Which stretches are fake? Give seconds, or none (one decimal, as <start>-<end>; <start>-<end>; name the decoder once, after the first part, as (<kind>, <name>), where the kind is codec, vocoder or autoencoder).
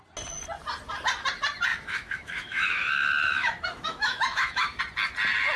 1.7-4.8 (autoencoder, DAC-VAE)